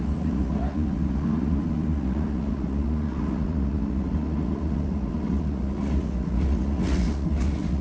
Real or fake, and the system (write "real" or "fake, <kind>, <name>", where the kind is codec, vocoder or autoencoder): fake, vocoder, Vocos